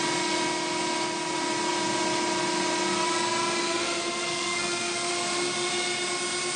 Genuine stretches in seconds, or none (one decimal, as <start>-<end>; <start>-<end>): 0.0-3.6; 5.1-6.6